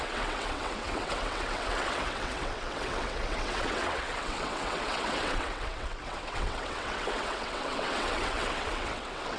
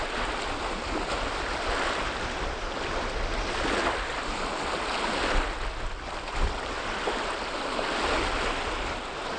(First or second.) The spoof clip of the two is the first